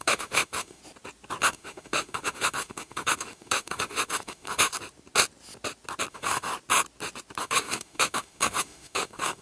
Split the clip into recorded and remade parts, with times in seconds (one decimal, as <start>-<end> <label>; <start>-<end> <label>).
0.0-0.8 remade; 0.8-1.4 recorded; 1.4-4.7 remade; 4.7-6.1 recorded; 6.1-6.5 remade; 6.5-7.4 recorded; 7.4-9.4 remade